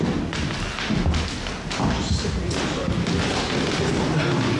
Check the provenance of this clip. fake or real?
real